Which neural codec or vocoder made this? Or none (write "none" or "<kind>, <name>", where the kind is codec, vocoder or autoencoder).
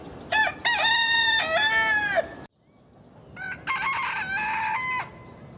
none